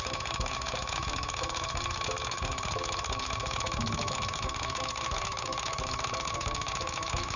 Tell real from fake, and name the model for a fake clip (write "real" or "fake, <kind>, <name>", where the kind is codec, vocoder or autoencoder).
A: fake, autoencoder, DAC-VAE